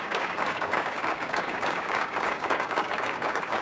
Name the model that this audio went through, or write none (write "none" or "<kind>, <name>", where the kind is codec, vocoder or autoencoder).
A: codec, DAC